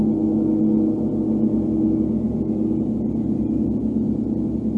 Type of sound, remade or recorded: recorded